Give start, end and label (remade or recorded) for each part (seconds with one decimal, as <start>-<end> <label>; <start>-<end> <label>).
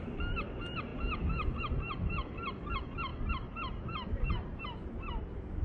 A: 0.0-5.6 recorded